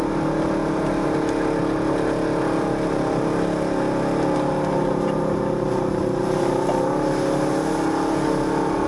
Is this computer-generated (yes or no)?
no